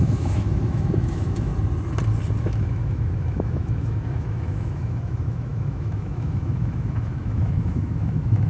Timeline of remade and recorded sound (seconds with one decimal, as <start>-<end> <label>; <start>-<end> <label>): 0.0-1.5 remade; 1.5-2.4 recorded; 2.4-8.5 remade